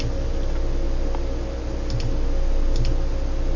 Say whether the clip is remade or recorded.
recorded